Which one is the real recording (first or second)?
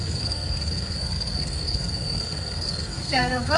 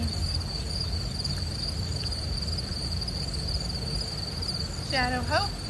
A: second